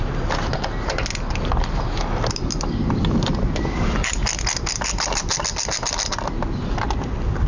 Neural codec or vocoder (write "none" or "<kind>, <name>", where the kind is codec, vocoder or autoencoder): none